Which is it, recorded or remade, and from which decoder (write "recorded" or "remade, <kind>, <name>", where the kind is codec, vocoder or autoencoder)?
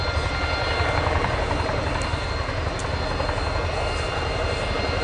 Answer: recorded